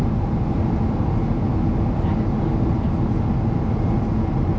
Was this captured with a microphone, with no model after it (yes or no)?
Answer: yes